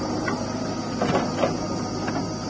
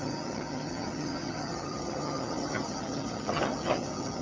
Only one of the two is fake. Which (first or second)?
second